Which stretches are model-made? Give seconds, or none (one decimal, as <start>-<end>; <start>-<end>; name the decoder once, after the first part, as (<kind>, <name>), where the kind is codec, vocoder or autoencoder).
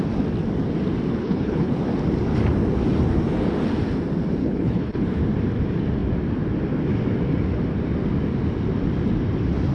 1.2-1.8 (codec, HILCodec); 4.4-5.2